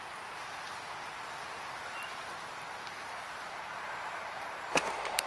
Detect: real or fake fake